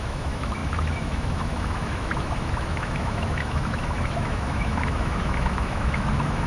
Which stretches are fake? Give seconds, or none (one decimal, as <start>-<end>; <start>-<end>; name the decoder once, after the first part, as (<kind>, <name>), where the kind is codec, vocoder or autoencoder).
0.0-6.5 (autoencoder, DAC-VAE)